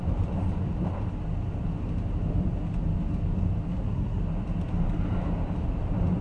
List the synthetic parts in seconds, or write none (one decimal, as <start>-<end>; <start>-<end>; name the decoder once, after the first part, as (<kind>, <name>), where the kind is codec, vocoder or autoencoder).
3.7-4.2 (codec, SNAC)